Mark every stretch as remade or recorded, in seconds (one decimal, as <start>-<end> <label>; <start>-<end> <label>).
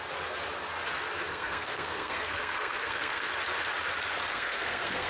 0.0-1.3 recorded; 1.3-3.3 remade; 3.3-4.3 recorded; 4.3-5.1 remade